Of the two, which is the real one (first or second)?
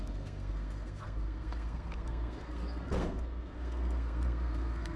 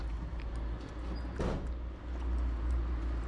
second